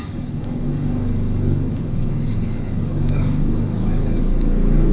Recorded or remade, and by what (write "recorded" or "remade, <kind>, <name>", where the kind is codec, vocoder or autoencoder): remade, codec, DAC